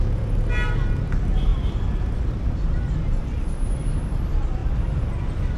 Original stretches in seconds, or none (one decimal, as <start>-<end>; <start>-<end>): 0.0-5.6